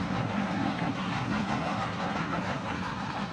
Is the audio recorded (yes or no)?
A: no